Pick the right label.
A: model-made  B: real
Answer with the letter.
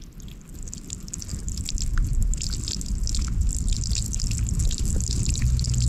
B